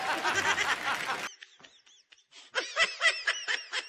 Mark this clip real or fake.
real